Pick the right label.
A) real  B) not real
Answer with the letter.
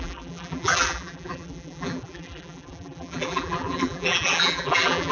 B